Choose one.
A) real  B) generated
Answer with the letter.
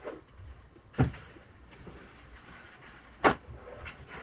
A